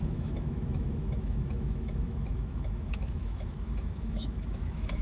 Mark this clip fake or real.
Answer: fake